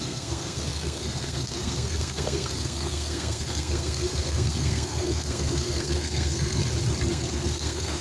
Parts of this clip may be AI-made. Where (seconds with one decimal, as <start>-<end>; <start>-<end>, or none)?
0.0-6.6; 7.1-8.0

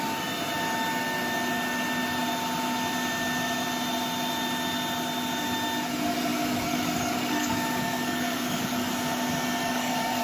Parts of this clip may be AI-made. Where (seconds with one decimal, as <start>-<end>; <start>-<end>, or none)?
6.3-8.9; 9.6-10.2

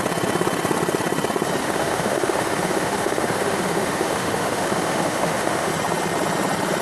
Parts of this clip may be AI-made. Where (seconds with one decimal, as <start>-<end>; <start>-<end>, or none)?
1.6-5.7

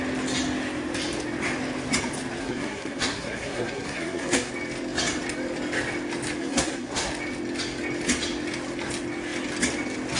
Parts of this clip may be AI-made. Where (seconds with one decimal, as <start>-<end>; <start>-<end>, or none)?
2.4-4.5; 6.4-7.1

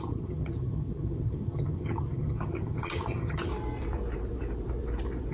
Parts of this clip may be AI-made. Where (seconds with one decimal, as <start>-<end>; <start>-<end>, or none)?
0.0-3.5

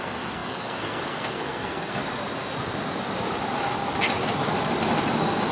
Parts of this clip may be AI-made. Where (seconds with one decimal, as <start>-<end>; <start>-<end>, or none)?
0.0-2.0